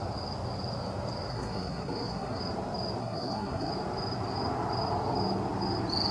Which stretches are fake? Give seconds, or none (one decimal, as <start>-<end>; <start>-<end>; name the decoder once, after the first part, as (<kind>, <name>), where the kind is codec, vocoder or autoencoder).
1.3-2.4 (codec, SNAC); 3.0-3.7